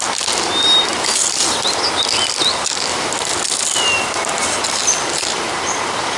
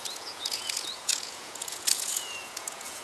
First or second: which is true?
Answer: first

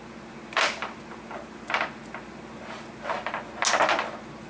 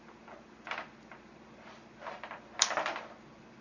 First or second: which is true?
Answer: first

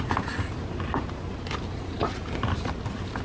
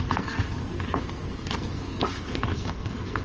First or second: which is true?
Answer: first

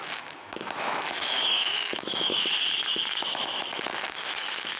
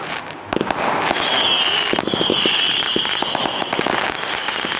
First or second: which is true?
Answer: second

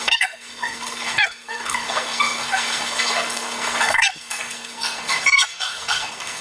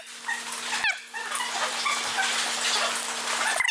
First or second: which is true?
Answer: second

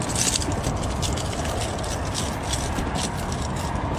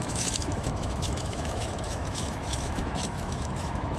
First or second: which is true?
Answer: first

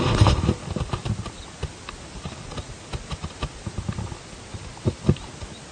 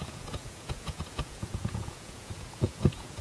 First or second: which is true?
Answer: first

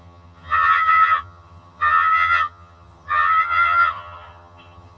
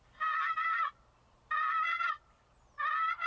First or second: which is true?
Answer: second